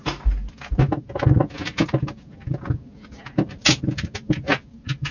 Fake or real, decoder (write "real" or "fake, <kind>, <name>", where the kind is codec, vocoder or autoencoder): real